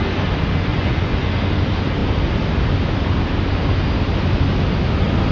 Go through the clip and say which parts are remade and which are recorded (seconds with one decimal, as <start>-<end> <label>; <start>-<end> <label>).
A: 0.0-0.7 recorded; 0.7-1.3 remade; 1.3-5.3 recorded